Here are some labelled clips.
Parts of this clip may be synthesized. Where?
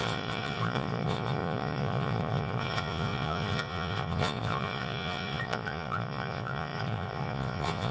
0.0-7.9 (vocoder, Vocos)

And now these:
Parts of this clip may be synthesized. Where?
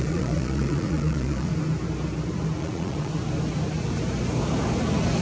0.0-1.5 (vocoder, Vocos); 2.6-3.1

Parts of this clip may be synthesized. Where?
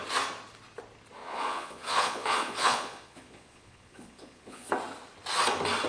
1.2-4.7 (vocoder, Vocos)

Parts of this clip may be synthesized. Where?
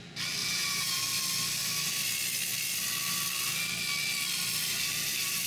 0.4-1.0 (vocoder, Vocos)